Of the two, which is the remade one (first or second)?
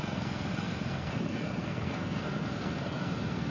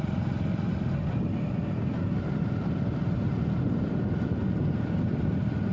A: first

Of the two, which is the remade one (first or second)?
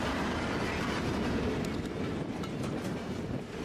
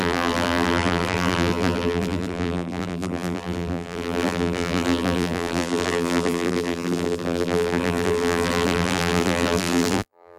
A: second